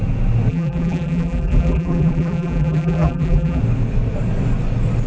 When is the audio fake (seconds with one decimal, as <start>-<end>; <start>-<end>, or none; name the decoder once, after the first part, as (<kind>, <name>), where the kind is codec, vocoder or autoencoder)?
0.5-3.6 (vocoder, BigVGAN v2)